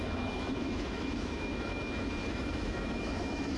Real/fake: fake